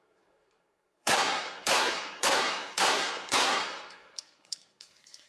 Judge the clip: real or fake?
fake